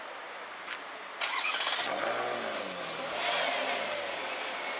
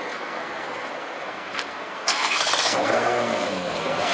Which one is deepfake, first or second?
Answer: second